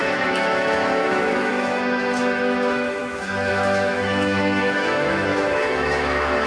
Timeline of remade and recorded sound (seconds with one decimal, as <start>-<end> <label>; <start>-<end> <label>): 0.0-6.5 remade